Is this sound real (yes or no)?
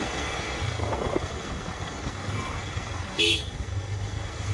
no